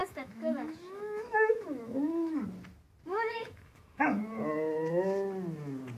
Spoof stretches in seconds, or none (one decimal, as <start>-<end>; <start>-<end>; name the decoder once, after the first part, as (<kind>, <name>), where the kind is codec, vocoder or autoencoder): 0.0-2.4 (autoencoder, DAC-VAE); 3.1-4.2